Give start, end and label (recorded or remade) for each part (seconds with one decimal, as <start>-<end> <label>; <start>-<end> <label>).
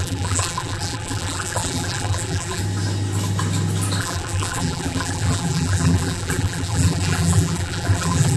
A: 0.0-2.6 remade; 2.6-4.0 recorded; 4.0-8.4 remade